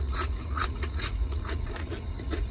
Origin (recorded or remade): remade